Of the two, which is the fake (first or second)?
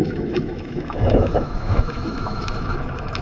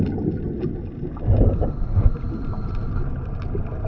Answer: first